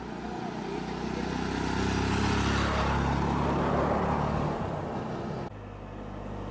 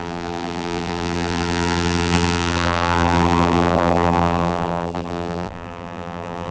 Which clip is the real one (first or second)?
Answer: first